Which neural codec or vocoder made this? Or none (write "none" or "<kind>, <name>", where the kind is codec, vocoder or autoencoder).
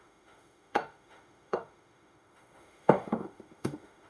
autoencoder, DAC-VAE